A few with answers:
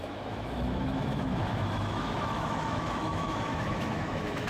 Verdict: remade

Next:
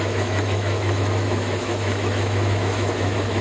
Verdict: remade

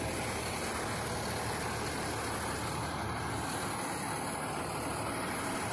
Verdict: recorded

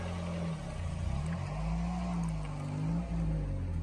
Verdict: recorded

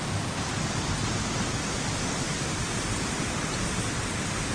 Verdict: recorded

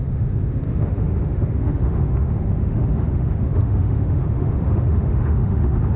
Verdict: remade